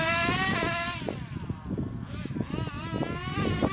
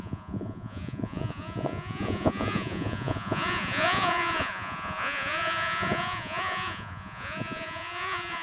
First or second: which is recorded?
first